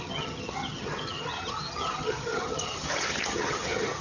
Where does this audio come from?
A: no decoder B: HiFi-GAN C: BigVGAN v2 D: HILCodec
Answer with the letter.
B